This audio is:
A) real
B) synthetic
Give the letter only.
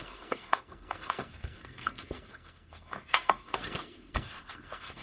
B